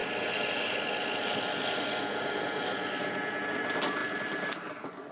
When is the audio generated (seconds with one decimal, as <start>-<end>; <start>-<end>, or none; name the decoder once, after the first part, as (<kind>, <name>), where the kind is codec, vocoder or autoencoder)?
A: none